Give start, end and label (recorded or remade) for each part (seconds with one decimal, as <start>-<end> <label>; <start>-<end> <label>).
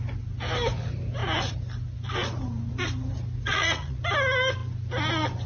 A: 0.0-3.5 recorded; 3.5-4.0 remade; 4.0-5.5 recorded